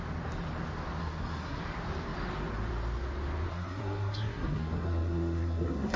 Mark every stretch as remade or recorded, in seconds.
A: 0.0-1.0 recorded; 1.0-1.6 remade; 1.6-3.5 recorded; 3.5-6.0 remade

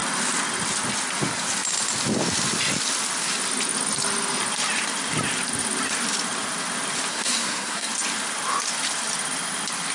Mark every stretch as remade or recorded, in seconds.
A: 0.0-7.1 recorded; 7.1-7.9 remade; 7.9-9.9 recorded